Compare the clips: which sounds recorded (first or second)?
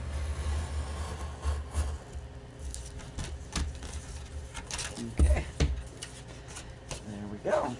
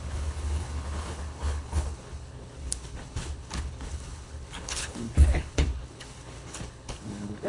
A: first